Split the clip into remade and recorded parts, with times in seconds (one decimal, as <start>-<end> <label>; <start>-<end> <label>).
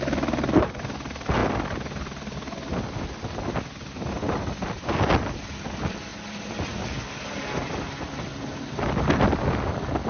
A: 0.0-10.1 recorded